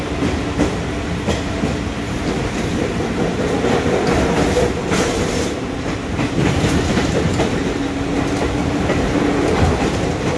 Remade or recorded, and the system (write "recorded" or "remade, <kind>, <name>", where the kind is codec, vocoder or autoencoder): remade, vocoder, BigVGAN v2